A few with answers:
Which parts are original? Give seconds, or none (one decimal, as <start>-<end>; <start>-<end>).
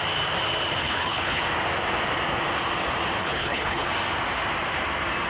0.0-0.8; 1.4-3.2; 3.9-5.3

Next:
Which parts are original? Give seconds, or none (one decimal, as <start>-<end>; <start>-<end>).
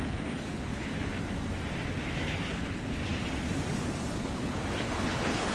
0.9-2.2; 3.0-4.2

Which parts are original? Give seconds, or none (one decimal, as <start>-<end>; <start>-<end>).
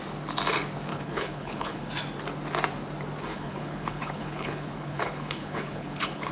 0.0-0.9; 1.9-3.3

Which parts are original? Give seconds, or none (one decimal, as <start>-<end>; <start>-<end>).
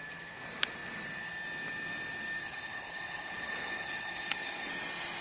0.0-2.4; 4.7-5.2